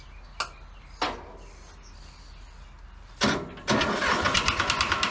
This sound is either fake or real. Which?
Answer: real